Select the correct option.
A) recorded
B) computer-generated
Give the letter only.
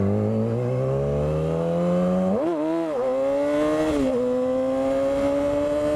A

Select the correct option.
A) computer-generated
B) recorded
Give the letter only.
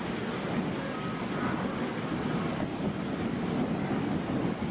B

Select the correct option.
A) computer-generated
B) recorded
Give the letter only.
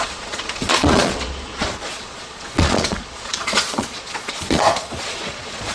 A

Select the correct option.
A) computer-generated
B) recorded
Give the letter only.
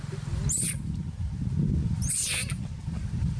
B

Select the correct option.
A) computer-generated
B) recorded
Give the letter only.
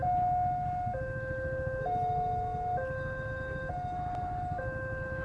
B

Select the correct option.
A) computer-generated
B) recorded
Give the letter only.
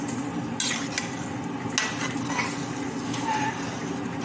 B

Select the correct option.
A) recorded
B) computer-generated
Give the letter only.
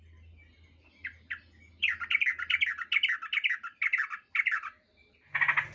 A